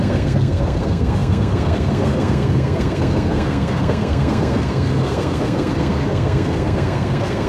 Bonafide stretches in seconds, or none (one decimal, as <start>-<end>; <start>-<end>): none